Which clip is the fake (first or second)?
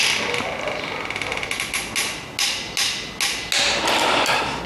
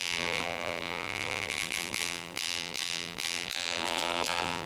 second